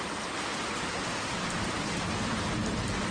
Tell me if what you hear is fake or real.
real